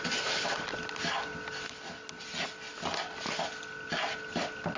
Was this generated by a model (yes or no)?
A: no